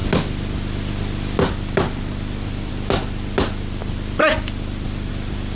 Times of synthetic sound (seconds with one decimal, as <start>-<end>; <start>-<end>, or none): none